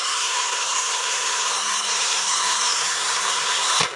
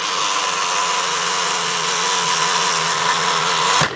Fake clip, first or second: first